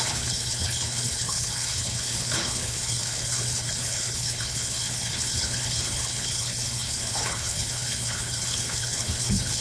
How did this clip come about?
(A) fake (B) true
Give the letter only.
A